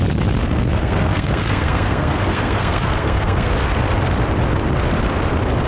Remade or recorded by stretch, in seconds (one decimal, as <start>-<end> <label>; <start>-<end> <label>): 0.0-0.4 recorded; 0.4-3.5 remade; 3.5-5.7 recorded